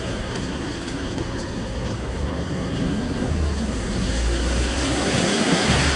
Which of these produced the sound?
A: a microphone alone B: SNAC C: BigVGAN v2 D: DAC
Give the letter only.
B